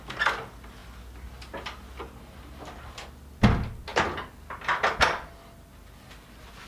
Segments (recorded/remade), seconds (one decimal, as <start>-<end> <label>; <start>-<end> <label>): 0.0-6.7 recorded